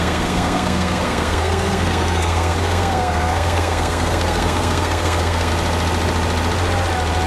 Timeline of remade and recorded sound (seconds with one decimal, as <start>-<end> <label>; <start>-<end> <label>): 0.0-5.5 remade; 5.5-7.3 recorded